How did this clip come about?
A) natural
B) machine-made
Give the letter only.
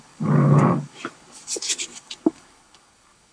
B